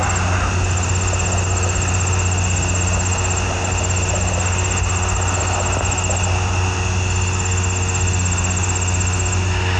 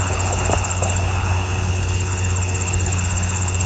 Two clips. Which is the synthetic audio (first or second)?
second